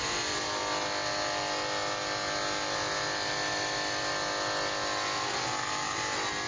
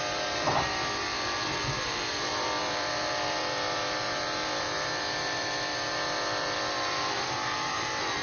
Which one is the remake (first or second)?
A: second